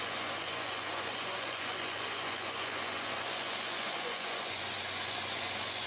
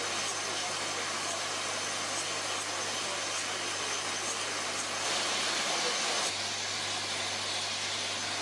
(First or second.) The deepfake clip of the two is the first